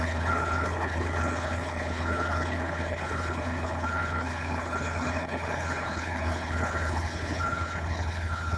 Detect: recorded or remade remade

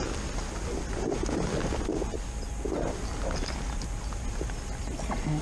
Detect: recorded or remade recorded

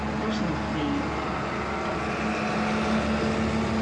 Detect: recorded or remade recorded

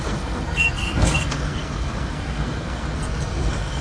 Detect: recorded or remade remade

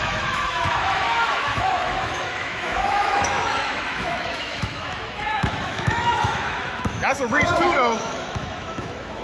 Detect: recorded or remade remade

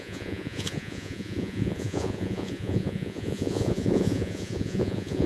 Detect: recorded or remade remade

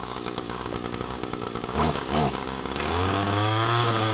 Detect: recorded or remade remade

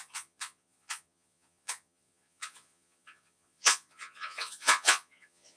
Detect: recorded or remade remade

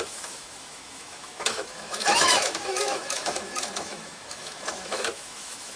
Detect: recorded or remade remade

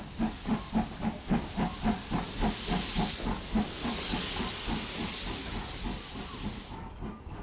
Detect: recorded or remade recorded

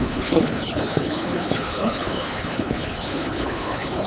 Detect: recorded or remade remade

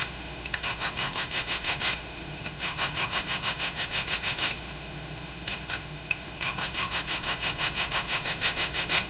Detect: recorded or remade remade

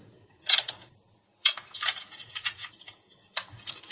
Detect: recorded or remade remade